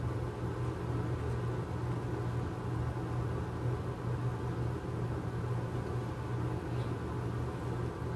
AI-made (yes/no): no